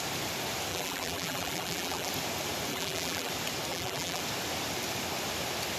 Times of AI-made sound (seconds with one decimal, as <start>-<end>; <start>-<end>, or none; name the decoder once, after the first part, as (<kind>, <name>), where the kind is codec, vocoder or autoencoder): 0.7-2.1 (vocoder, BigVGAN v2); 2.7-3.3; 3.7-4.2